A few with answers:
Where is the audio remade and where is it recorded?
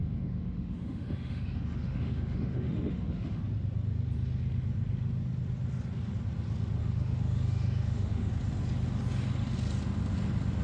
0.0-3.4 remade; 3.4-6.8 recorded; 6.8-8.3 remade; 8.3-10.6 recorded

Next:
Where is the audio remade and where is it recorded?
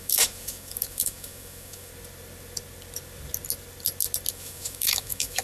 0.0-1.9 remade; 1.9-4.3 recorded; 4.3-5.4 remade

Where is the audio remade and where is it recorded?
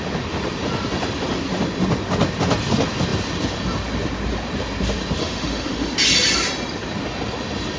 0.0-5.2 recorded; 5.2-5.9 remade; 5.9-7.8 recorded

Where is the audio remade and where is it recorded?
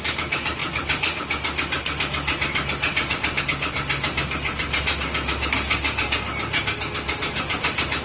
0.0-8.0 recorded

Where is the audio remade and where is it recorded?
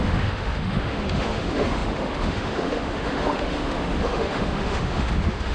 0.0-5.5 remade